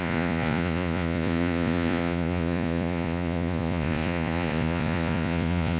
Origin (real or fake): fake